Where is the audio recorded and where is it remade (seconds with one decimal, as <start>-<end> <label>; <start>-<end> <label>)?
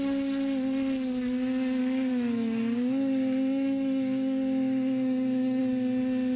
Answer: 0.0-1.8 recorded; 1.8-5.6 remade; 5.6-6.4 recorded